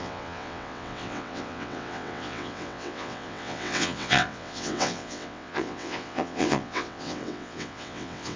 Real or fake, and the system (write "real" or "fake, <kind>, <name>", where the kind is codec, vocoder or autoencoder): fake, vocoder, WaveNeXt